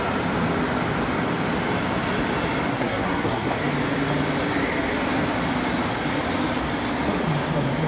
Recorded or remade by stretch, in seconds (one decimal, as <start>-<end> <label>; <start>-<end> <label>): 0.0-2.7 recorded; 2.7-3.5 remade; 3.5-7.9 recorded